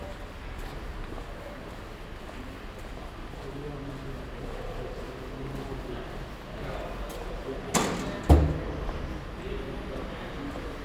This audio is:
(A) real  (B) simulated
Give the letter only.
A